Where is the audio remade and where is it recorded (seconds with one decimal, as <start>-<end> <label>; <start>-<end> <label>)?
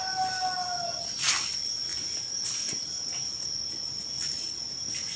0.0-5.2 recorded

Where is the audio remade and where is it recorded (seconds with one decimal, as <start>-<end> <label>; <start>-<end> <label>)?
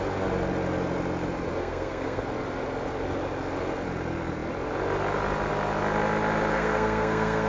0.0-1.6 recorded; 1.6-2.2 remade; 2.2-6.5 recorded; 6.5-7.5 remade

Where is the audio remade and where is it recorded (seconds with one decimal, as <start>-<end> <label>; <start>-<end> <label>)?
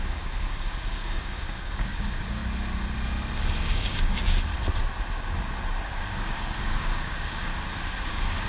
0.0-2.4 remade; 2.4-3.6 recorded; 3.6-4.5 remade; 4.5-6.0 recorded; 6.0-7.5 remade; 7.5-8.1 recorded; 8.1-8.5 remade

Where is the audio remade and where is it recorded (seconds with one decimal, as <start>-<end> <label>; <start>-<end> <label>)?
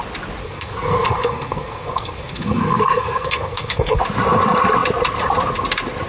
0.0-0.4 recorded; 0.4-4.0 remade; 4.0-6.1 recorded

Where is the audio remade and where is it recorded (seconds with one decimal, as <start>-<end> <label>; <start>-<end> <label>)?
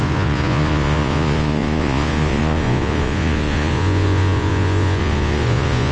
0.0-5.9 remade